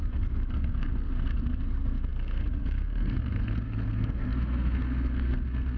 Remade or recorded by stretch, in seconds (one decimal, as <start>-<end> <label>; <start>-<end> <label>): 0.0-5.8 remade